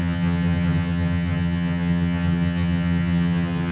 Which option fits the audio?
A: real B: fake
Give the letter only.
B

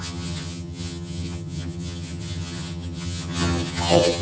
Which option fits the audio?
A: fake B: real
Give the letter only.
A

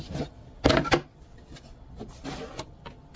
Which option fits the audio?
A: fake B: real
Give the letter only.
B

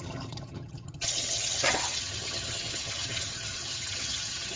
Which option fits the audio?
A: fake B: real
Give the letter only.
A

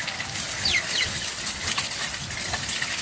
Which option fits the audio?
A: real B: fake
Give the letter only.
A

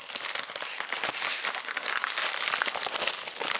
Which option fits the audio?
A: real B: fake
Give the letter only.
A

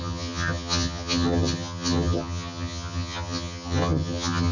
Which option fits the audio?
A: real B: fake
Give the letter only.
B